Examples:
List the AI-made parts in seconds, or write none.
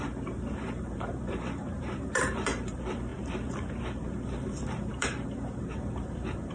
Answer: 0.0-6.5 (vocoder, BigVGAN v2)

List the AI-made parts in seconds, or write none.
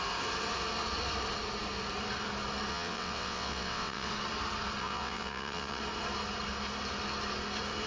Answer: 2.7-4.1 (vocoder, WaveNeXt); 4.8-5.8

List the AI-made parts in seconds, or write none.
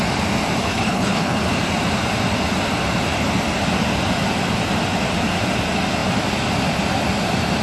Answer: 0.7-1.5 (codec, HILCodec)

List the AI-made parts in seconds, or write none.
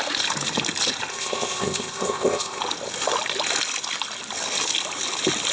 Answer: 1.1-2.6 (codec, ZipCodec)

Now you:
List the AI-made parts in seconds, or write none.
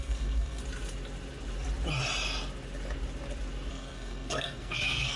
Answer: 0.0-0.6 (codec, SNAC); 3.7-5.2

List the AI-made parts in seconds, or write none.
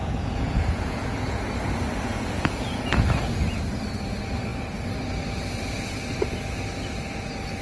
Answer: 0.0-1.4 (vocoder, Vocos); 2.1-3.6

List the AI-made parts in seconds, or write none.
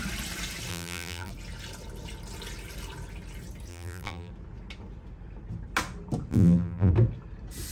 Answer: 0.7-1.3 (vocoder, BigVGAN v2); 3.7-4.3; 6.3-6.9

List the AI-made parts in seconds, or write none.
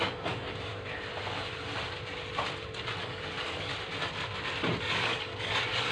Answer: 0.0-0.7 (codec, DAC); 3.0-3.7; 4.8-5.9